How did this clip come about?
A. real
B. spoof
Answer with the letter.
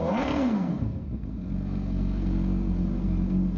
B